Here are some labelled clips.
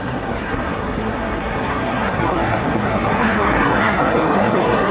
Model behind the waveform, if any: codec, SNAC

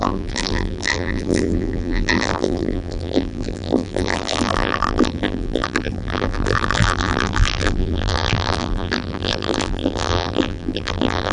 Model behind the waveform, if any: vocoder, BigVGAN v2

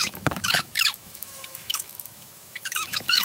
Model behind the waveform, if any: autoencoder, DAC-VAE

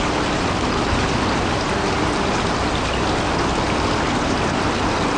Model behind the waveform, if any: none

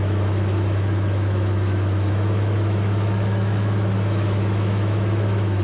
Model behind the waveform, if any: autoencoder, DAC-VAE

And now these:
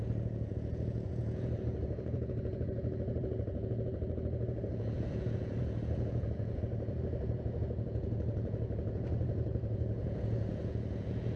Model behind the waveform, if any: vocoder, Vocos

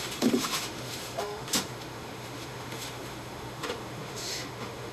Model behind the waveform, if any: autoencoder, DAC-VAE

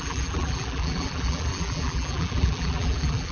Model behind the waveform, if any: vocoder, BigVGAN v2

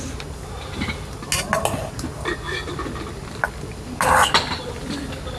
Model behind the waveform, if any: none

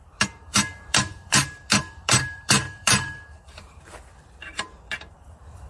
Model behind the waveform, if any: vocoder, BigVGAN v2